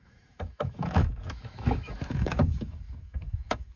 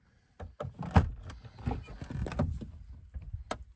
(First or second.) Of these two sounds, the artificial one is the first